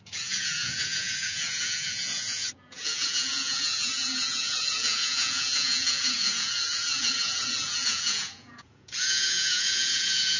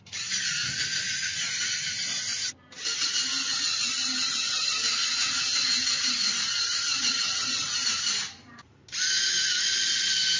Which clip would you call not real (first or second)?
first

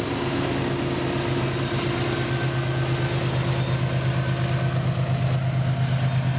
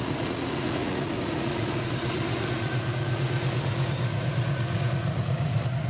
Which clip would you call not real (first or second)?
second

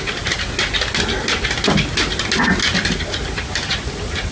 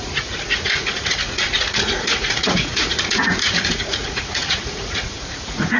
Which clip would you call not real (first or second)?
second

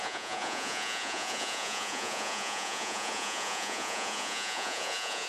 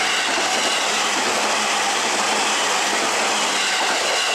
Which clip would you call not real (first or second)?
first